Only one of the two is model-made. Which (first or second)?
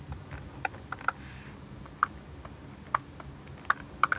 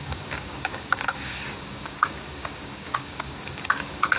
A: second